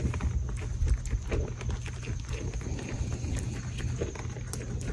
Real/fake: real